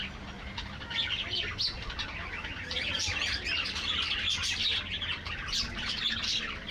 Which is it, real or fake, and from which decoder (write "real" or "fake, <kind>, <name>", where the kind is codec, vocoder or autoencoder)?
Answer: real